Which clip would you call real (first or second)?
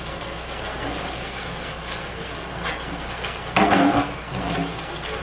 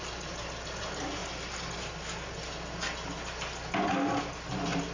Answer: second